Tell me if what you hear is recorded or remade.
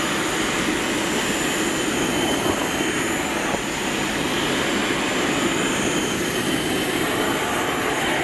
recorded